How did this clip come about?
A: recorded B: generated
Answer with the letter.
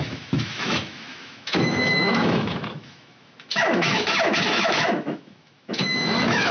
B